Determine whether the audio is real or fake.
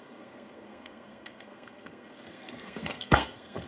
fake